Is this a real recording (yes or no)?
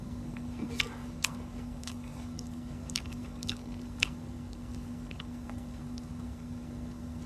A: no